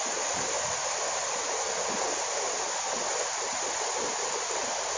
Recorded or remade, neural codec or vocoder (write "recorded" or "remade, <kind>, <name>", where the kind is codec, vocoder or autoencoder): recorded